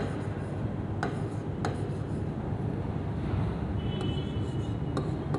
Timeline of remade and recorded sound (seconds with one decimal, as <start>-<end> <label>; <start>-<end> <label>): 0.0-5.4 recorded